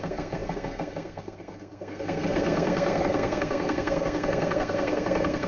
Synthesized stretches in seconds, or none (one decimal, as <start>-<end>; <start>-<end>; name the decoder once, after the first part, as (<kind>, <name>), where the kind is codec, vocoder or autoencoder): 0.0-5.5 (codec, SNAC)